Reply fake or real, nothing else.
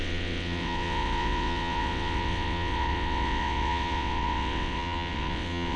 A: fake